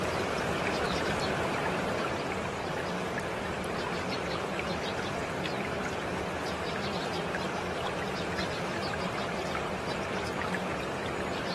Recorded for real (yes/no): no